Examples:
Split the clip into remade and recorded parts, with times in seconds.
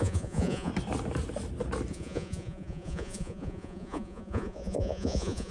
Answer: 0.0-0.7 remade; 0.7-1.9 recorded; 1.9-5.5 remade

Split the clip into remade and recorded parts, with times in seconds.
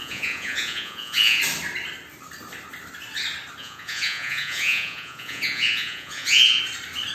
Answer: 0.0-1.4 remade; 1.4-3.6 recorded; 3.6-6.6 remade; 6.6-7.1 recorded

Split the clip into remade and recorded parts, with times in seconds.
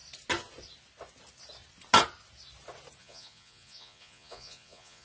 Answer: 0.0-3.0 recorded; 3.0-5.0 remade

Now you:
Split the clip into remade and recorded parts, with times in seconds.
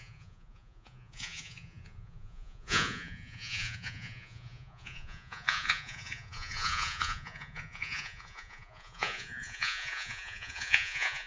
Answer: 0.0-11.3 remade